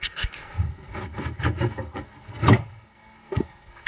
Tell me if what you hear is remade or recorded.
remade